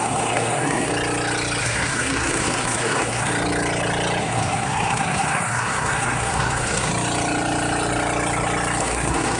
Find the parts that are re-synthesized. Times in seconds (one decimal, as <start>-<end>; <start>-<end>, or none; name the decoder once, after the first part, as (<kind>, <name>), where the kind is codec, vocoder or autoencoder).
0.0-0.9 (codec, SNAC); 1.6-3.3; 4.2-6.9; 8.8-9.4